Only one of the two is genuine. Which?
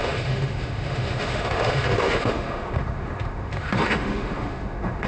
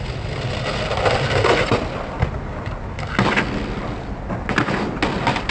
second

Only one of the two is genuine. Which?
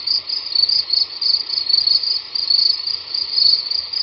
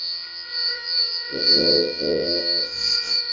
first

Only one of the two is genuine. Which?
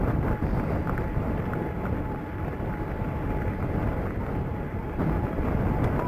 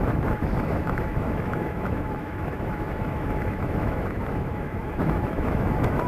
first